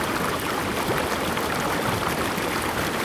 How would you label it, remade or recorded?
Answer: recorded